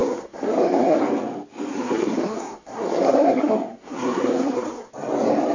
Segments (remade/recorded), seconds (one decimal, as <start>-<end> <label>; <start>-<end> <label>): 0.0-1.0 remade; 1.0-1.7 recorded; 1.7-4.9 remade; 4.9-5.5 recorded